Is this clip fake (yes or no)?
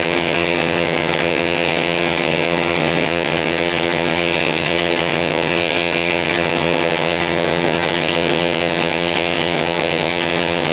yes